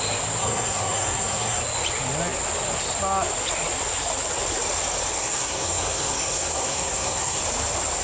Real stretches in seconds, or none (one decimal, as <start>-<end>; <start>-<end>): 0.0-0.4; 1.6-5.2; 7.4-8.0